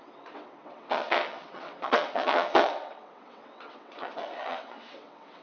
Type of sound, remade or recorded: remade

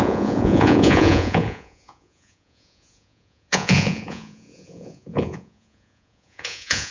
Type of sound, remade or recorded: remade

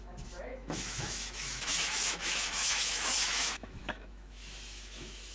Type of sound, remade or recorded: remade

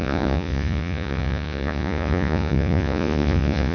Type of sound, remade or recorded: remade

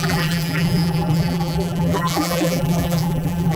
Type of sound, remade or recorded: remade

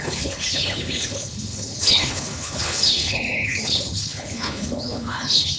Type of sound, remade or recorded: remade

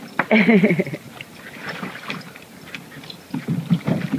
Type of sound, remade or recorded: recorded